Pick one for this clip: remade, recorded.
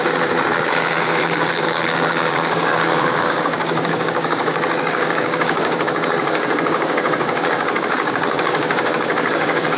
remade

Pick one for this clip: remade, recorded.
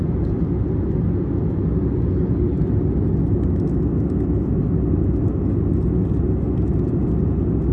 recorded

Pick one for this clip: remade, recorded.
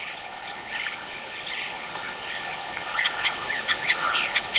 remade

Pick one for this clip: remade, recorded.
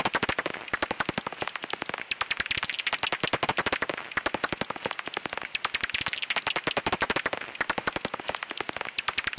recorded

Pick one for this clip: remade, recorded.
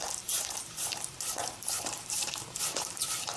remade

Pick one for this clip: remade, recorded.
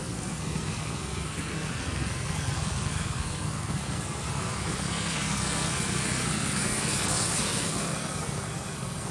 remade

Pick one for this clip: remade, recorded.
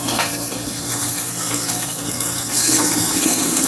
remade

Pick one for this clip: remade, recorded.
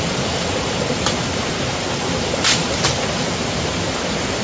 recorded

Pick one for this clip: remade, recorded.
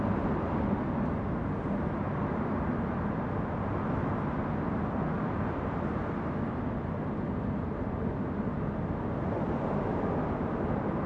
recorded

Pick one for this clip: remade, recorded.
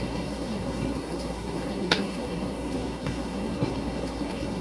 remade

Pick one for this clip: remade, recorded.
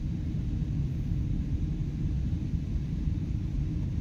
remade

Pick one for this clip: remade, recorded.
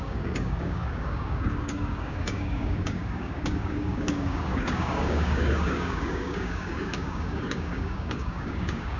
remade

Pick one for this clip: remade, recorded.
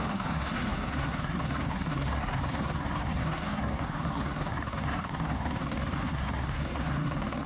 remade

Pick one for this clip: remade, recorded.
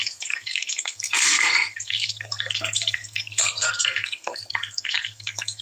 remade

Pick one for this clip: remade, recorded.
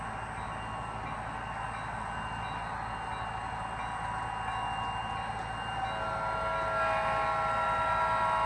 recorded